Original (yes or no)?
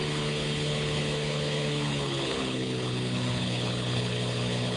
no